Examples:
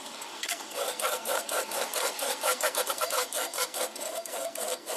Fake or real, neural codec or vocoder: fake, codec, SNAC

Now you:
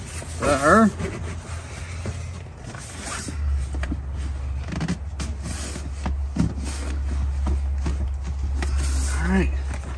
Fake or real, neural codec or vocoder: real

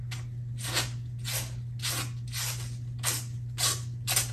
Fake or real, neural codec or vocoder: real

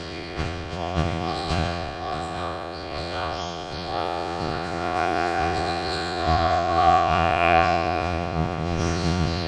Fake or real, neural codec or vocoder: fake, vocoder, Vocos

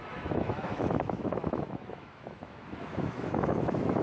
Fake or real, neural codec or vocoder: fake, autoencoder, DAC-VAE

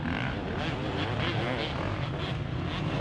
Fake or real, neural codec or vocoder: real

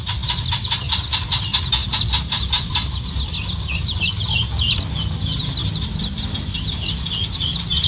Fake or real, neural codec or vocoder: real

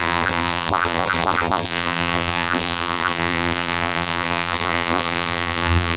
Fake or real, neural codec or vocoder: fake, vocoder, BigVGAN v2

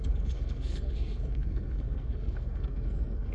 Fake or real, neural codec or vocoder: fake, codec, SNAC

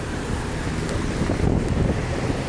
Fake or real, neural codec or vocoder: real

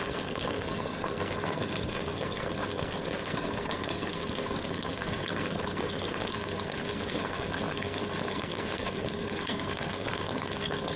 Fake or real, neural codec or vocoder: fake, codec, SNAC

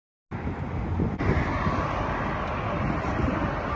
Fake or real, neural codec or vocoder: real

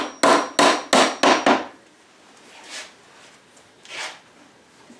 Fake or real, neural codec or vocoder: real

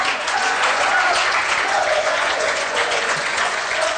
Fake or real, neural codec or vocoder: fake, vocoder, Vocos